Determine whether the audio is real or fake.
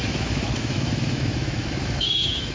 fake